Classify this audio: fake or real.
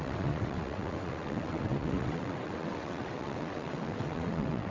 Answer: fake